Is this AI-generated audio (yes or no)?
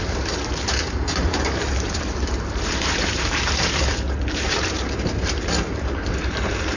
yes